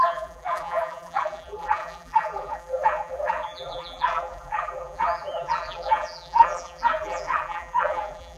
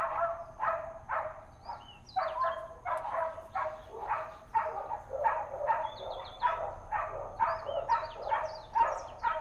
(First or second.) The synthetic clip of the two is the first